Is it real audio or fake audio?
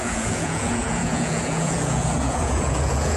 fake